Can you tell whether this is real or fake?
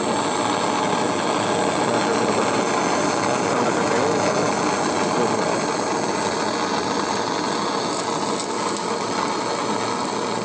real